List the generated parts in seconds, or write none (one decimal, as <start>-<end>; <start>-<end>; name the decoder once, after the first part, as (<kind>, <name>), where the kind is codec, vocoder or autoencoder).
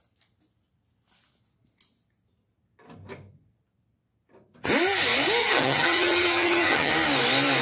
5.4-6.9 (vocoder, HiFi-GAN)